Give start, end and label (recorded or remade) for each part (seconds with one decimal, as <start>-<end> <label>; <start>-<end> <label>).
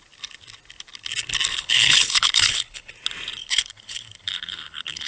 0.0-1.5 recorded; 1.5-2.9 remade; 2.9-3.4 recorded; 3.4-5.1 remade